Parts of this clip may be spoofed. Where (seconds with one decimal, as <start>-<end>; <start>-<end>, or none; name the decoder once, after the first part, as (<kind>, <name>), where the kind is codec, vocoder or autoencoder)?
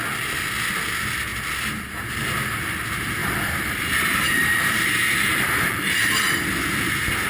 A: 3.2-6.3 (vocoder, BigVGAN v2)